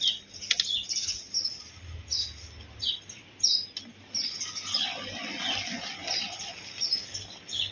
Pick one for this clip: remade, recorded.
recorded